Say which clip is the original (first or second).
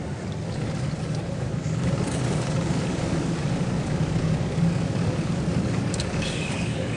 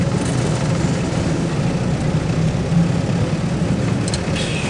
second